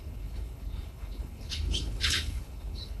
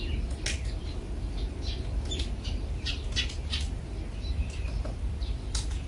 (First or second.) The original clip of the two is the second